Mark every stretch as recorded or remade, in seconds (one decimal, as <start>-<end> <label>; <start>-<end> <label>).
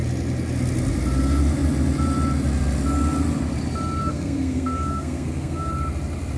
0.0-4.0 recorded; 4.0-5.7 remade; 5.7-6.4 recorded